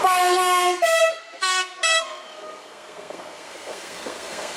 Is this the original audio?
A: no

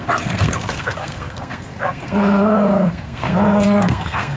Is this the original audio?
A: no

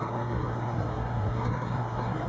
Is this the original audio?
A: no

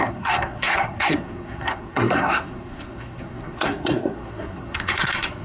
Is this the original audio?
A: no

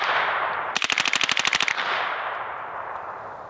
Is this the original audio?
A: yes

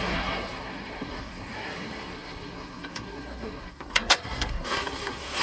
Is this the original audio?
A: no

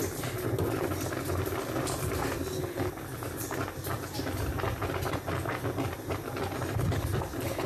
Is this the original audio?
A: yes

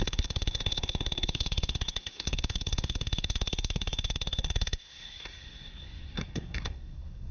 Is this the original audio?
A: no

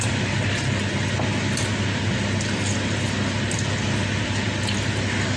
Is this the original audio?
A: yes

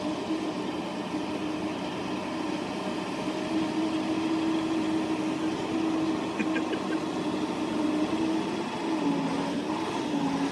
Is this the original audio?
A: yes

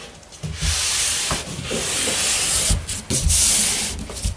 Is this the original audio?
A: yes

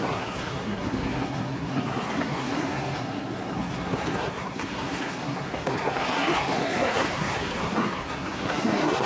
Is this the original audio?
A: no